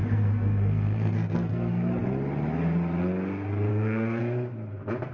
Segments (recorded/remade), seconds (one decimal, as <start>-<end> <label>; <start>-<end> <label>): 0.0-1.9 remade; 1.9-3.7 recorded; 3.7-4.2 remade; 4.2-5.1 recorded